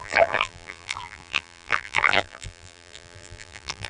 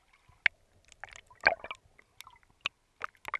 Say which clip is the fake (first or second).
first